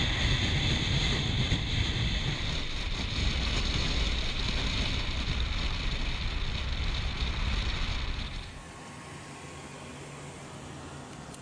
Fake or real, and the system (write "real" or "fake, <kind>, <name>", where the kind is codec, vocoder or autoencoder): real